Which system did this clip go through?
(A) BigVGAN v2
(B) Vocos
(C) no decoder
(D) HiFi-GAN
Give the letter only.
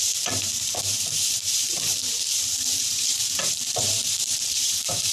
A